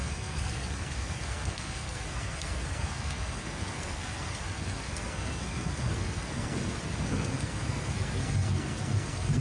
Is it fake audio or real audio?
fake